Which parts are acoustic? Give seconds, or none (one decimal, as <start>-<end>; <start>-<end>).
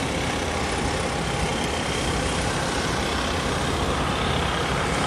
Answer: 0.0-5.1